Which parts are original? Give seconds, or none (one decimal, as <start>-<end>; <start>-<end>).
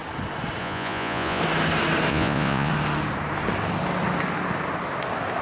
0.0-0.6; 1.4-2.1; 2.7-5.4